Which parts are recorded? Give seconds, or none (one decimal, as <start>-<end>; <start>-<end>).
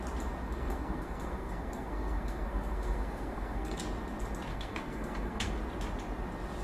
0.0-0.4; 3.8-4.5; 5.5-6.6